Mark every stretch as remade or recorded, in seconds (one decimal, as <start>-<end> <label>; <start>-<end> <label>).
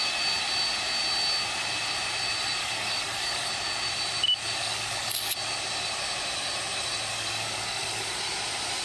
0.0-2.6 recorded; 2.6-3.5 remade; 3.5-4.6 recorded; 4.6-5.1 remade; 5.1-7.1 recorded; 7.1-8.2 remade; 8.2-8.8 recorded